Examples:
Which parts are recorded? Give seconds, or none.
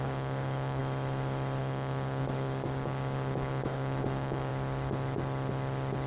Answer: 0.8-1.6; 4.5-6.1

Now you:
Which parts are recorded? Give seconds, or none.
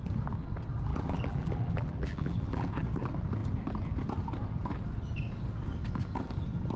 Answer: 0.0-0.9; 2.7-6.8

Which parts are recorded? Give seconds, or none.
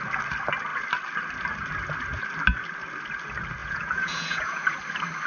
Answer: 0.0-3.6; 4.8-5.3